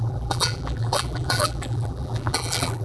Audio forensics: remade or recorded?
remade